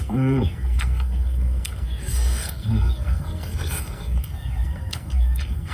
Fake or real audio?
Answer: fake